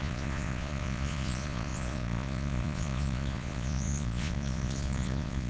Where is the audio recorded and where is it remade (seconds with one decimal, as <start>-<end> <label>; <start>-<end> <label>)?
0.0-5.5 remade